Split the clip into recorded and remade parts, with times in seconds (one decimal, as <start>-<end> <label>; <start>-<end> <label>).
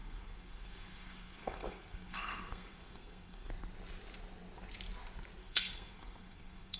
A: 0.0-3.5 remade; 3.5-5.4 recorded; 5.4-6.8 remade